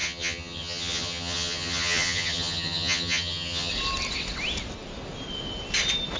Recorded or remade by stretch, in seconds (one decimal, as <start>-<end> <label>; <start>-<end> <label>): 0.0-3.7 remade; 3.7-6.2 recorded